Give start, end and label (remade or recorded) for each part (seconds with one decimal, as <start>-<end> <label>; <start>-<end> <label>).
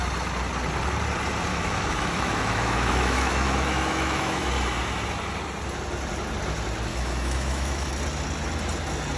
0.0-1.5 recorded; 1.5-4.5 remade; 4.5-6.9 recorded; 6.9-7.9 remade; 7.9-9.2 recorded